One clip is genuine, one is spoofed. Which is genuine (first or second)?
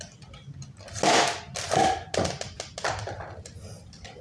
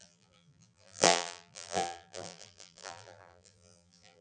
first